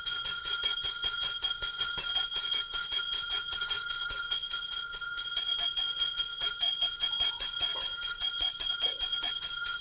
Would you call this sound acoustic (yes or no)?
no